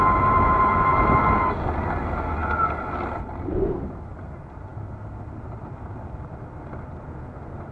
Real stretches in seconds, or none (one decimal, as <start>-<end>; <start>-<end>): 0.0-7.7

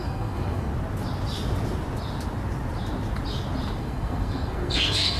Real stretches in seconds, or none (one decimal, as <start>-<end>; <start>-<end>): 0.7-3.8

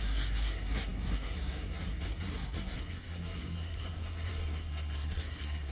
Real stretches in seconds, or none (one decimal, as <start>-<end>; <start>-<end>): none

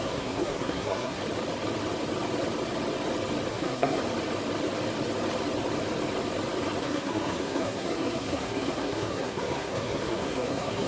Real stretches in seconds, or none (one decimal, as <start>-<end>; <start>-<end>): 1.2-3.5; 4.0-6.8

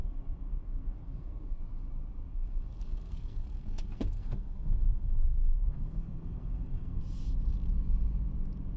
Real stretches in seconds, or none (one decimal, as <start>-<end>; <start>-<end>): 1.6-2.3; 7.0-8.8

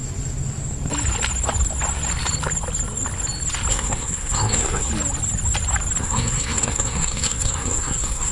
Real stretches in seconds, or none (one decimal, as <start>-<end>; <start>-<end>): 0.0-3.7; 4.9-6.0

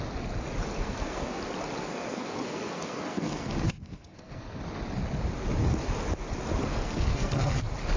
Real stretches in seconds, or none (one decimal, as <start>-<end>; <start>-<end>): 0.0-0.8; 1.4-1.8; 4.6-6.7; 7.6-8.0